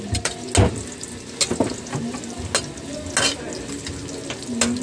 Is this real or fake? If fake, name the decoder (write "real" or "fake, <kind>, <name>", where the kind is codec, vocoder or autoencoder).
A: real